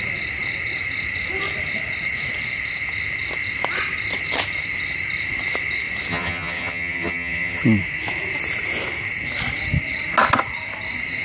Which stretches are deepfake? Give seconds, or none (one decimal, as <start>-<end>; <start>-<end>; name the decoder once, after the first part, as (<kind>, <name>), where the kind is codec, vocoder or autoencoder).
6.1-7.6 (vocoder, HiFi-GAN)